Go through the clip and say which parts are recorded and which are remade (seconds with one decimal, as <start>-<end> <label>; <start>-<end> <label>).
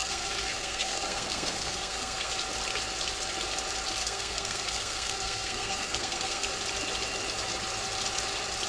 0.0-2.3 remade; 2.3-4.0 recorded; 4.0-6.5 remade; 6.5-8.7 recorded